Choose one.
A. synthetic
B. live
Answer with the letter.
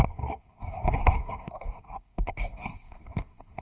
A